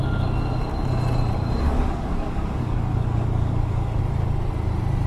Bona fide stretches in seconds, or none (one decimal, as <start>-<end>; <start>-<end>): 0.0-1.7; 4.0-5.1